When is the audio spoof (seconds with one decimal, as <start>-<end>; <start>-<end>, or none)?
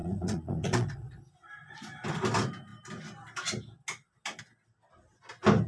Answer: 0.0-1.3